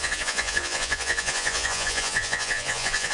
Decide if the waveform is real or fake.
fake